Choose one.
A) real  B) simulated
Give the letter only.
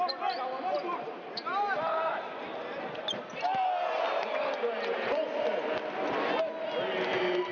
A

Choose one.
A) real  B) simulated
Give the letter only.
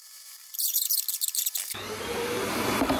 B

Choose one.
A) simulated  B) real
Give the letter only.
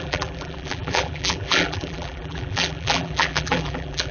A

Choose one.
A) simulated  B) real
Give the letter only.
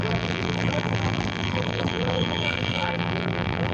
A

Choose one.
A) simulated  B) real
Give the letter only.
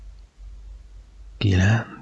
B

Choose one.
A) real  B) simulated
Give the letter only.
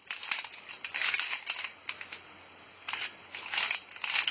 A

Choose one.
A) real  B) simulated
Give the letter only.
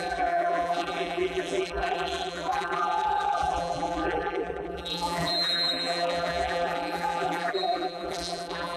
B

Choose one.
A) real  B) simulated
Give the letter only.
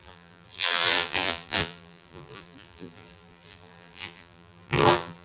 B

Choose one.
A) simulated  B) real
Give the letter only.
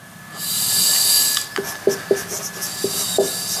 B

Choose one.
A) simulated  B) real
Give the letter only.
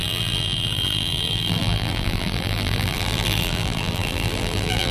A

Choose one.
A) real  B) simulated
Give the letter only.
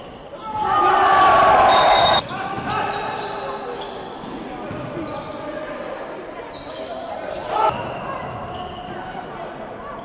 A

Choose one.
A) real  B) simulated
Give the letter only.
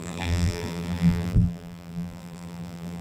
B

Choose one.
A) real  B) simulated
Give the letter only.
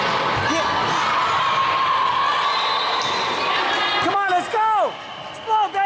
A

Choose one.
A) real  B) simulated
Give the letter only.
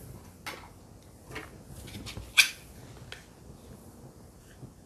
A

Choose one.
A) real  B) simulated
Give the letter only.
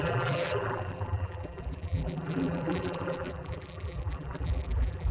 B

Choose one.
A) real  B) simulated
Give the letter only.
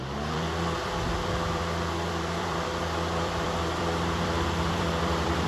B